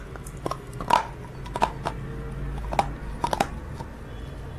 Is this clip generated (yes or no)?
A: no